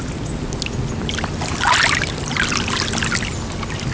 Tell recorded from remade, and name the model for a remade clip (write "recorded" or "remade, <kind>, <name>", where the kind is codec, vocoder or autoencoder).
recorded